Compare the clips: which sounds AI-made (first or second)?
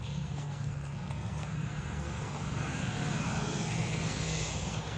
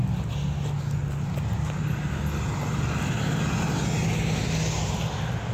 first